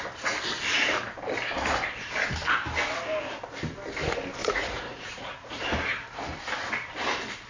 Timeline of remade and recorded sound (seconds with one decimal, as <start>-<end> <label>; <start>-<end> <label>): 0.0-4.4 recorded; 4.4-5.6 remade; 5.6-7.5 recorded